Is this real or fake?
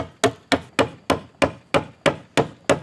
real